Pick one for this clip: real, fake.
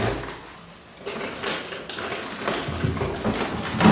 real